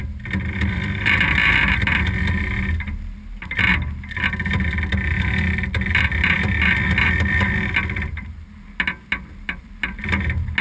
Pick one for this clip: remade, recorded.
recorded